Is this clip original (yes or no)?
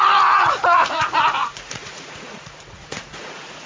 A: no